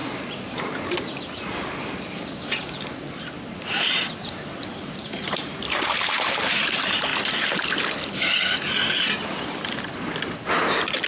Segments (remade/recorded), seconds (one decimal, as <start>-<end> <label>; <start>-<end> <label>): 0.0-0.8 remade; 0.8-5.2 recorded; 5.2-6.6 remade; 6.6-11.1 recorded